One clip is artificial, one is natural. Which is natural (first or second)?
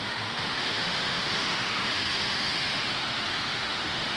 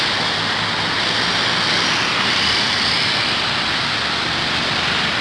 second